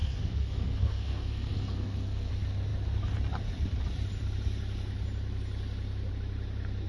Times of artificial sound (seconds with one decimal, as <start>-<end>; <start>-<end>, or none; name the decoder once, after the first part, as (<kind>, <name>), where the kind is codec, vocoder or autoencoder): 0.0-2.3 (codec, SNAC)